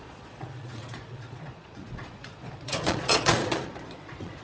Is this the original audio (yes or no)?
no